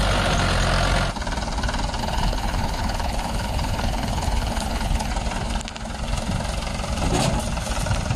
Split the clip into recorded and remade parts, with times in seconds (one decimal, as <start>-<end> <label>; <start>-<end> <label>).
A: 0.0-2.0 recorded; 2.0-5.1 remade; 5.1-8.2 recorded